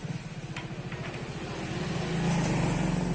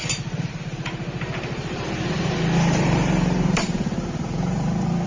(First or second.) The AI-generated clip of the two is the second